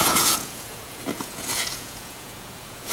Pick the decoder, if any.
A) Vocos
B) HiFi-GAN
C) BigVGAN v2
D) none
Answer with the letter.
A